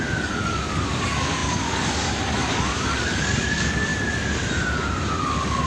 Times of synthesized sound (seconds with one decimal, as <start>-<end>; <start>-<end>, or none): 0.0-3.9; 5.2-5.7